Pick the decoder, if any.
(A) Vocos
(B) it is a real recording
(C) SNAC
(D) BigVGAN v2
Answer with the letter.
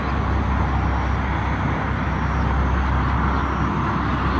B